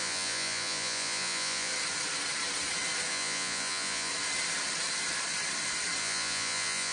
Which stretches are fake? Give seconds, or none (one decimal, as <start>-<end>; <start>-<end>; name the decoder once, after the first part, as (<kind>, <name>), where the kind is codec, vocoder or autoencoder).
0.0-1.7 (vocoder, Vocos); 3.1-4.1; 6.0-6.9